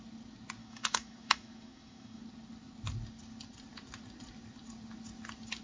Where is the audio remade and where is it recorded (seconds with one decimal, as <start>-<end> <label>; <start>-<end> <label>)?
0.0-0.6 recorded; 0.6-2.2 remade; 2.2-5.6 recorded

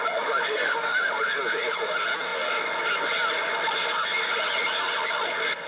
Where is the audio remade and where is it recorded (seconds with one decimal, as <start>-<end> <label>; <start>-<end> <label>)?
0.0-0.5 recorded; 0.5-1.1 remade; 1.1-5.7 recorded

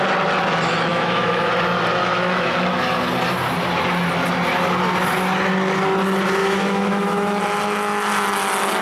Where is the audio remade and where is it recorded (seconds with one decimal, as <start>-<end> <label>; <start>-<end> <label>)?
0.0-0.9 recorded; 0.9-1.5 remade; 1.5-2.0 recorded; 2.0-2.6 remade; 2.6-6.4 recorded; 6.4-7.4 remade; 7.4-8.8 recorded

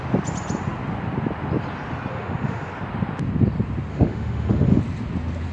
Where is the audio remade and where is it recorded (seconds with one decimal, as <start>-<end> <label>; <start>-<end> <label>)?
0.0-2.1 recorded; 2.1-2.7 remade; 2.7-3.9 recorded; 3.9-4.8 remade; 4.8-5.5 recorded

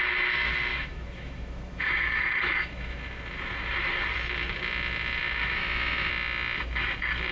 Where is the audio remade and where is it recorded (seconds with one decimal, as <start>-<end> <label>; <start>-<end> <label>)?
0.0-0.7 recorded; 0.7-3.0 remade; 3.0-5.4 recorded; 5.4-6.1 remade; 6.1-7.3 recorded

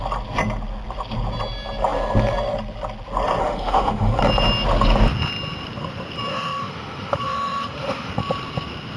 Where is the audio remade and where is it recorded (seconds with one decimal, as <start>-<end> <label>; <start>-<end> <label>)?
0.0-3.4 recorded; 3.4-4.2 remade; 4.2-6.3 recorded; 6.3-8.1 remade; 8.1-9.0 recorded

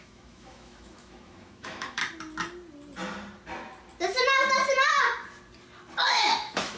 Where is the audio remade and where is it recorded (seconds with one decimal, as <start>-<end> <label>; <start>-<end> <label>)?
0.0-2.0 remade; 2.0-6.1 recorded; 6.1-6.8 remade